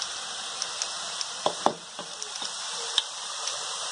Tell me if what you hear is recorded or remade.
remade